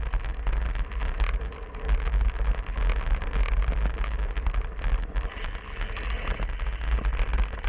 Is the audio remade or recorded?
recorded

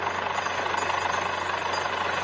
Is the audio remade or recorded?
recorded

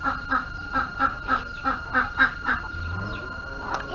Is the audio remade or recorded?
recorded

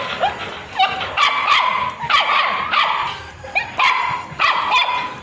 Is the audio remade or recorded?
recorded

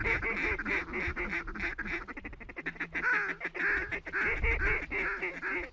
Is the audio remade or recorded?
recorded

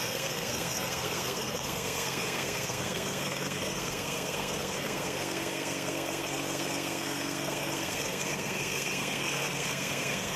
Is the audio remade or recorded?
remade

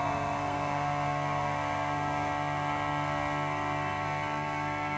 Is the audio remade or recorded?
remade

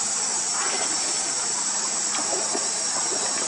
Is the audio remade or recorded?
recorded